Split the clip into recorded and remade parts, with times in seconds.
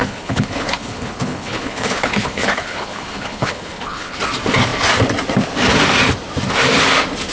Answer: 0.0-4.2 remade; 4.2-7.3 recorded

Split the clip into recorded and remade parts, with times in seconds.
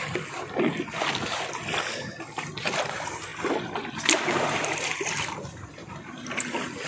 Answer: 0.0-6.9 recorded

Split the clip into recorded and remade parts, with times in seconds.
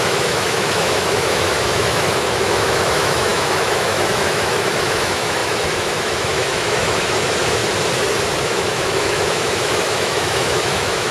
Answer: 0.0-7.6 remade; 7.6-8.4 recorded; 8.4-11.1 remade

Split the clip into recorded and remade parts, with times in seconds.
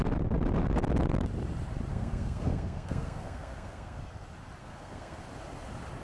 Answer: 0.0-1.9 recorded; 1.9-4.0 remade; 4.0-4.6 recorded; 4.6-5.2 remade; 5.2-6.0 recorded